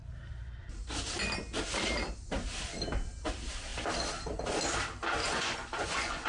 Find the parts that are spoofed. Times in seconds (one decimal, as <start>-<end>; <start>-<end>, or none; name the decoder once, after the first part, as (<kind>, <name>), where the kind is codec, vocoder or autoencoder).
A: 5.2-6.3 (vocoder, Vocos)